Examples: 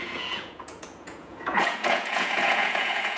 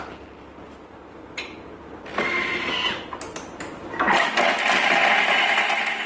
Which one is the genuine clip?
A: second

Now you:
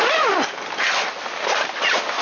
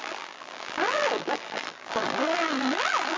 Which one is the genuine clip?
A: first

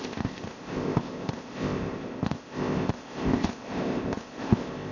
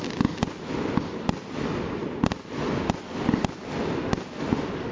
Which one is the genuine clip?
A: second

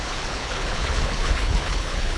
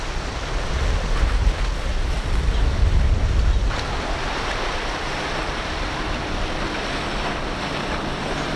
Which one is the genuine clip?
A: second